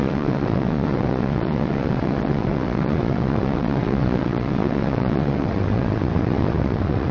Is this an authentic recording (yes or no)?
no